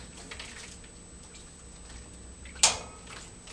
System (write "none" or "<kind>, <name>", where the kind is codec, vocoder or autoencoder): none